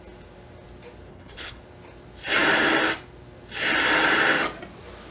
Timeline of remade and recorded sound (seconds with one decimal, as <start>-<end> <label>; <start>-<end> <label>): 0.0-1.1 recorded; 1.1-1.6 remade; 1.6-5.1 recorded